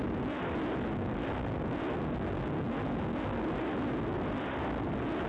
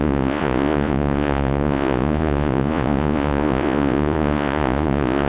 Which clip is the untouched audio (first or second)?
first